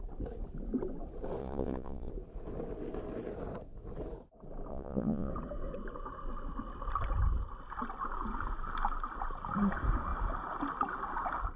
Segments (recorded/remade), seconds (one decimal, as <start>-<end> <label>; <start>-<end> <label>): 0.0-1.4 recorded; 1.4-2.1 remade; 2.1-4.7 recorded; 4.7-5.3 remade; 5.3-11.6 recorded